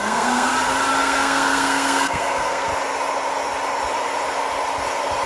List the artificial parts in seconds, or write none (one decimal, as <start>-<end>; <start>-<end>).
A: 0.0-0.5; 1.0-2.7